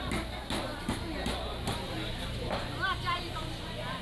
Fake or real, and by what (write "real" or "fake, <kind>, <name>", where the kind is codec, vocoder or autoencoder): real